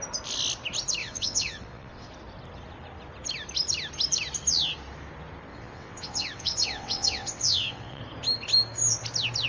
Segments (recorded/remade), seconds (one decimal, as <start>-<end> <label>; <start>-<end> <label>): 0.0-1.0 recorded; 1.0-2.1 remade; 2.1-5.5 recorded; 5.5-8.0 remade; 8.0-9.5 recorded